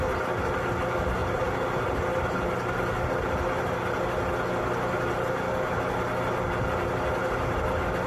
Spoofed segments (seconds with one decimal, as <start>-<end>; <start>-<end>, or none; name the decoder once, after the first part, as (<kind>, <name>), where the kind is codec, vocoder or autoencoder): none